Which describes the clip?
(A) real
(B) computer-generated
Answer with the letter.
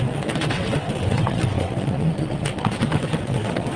B